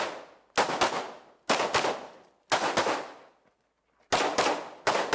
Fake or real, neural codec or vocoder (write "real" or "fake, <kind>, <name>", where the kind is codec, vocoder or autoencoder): real